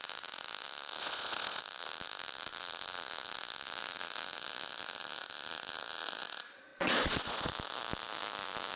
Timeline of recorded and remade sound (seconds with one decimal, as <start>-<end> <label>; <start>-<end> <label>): 0.0-1.0 recorded; 1.0-1.6 remade; 1.6-6.7 recorded; 6.7-7.5 remade; 7.5-8.8 recorded